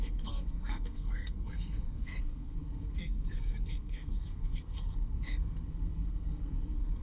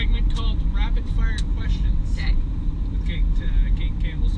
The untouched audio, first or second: second